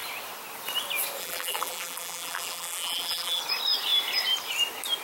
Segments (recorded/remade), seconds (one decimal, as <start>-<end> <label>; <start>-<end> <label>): 0.0-1.2 recorded; 1.2-3.4 remade; 3.4-5.0 recorded

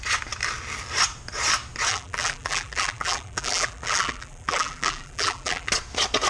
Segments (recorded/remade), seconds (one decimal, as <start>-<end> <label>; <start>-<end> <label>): 0.0-1.9 recorded; 1.9-5.7 remade; 5.7-6.3 recorded

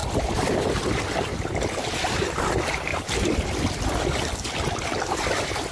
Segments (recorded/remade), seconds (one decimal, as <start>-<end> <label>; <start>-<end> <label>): 0.0-5.7 recorded

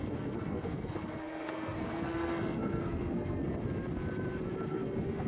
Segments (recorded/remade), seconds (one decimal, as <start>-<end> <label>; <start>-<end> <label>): 0.0-3.4 remade; 3.4-4.7 recorded; 4.7-5.3 remade

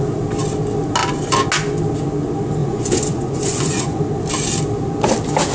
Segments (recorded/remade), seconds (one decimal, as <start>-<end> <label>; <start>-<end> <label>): 0.0-2.6 recorded; 2.6-4.0 remade; 4.0-5.5 recorded

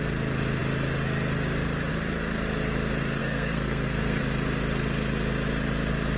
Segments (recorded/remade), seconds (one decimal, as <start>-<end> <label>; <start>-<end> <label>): 0.0-3.2 recorded; 3.2-4.2 remade; 4.2-6.2 recorded

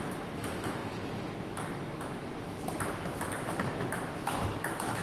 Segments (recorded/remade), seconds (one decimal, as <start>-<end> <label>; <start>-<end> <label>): 0.0-5.0 remade